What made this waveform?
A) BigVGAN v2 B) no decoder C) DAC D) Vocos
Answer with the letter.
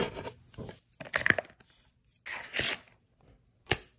B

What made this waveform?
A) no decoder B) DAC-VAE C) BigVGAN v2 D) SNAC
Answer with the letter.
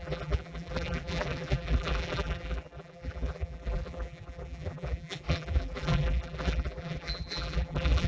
C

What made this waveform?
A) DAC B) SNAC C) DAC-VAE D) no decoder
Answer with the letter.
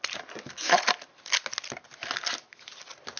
D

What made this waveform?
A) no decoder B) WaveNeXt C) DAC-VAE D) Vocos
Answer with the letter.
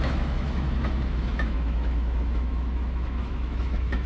C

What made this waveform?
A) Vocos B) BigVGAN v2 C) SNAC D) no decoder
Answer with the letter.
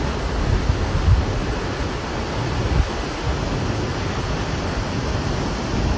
D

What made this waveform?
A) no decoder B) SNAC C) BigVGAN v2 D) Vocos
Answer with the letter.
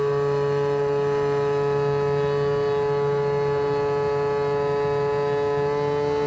A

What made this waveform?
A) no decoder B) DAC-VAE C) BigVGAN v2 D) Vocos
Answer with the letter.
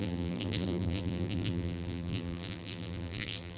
C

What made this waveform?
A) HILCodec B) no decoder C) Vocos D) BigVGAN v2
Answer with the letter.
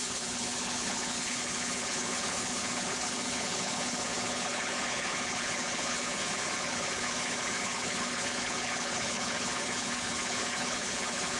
A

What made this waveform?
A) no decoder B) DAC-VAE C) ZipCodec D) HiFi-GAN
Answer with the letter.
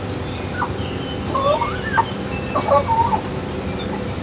A